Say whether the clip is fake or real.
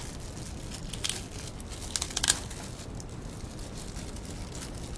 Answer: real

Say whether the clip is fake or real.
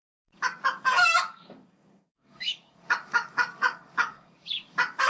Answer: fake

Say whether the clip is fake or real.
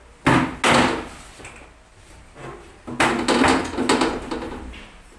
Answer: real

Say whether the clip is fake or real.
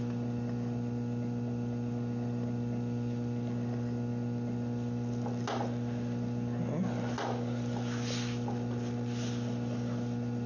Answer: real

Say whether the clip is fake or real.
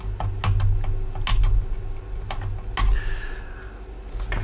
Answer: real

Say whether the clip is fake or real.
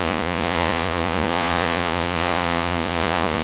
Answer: fake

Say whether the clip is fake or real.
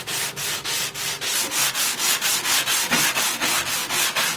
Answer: real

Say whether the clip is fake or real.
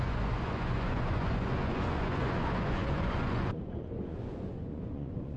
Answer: fake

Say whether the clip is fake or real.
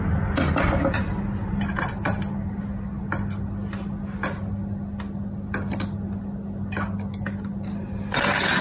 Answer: real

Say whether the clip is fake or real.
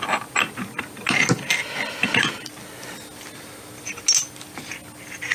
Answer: real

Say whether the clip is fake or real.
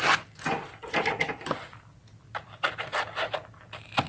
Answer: real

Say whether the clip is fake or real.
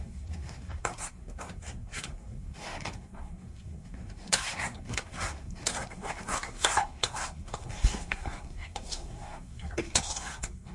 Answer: fake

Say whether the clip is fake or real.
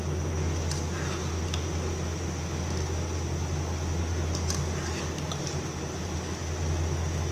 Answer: real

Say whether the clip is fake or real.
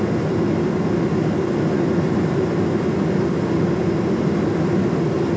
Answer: real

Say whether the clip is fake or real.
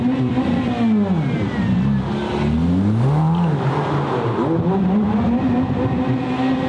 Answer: real